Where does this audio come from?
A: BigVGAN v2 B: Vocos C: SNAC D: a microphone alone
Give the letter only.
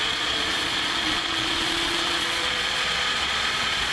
B